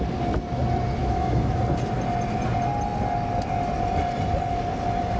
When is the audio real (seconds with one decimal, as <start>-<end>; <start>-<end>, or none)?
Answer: 0.0-1.0; 1.6-5.2